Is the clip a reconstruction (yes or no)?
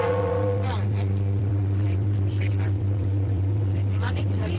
yes